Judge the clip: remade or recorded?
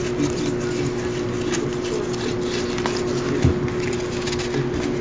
recorded